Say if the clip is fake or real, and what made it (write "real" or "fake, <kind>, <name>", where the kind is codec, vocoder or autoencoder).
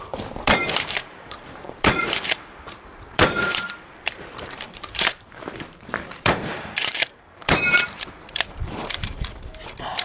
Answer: fake, vocoder, BigVGAN v2